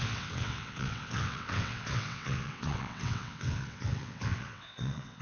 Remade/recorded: remade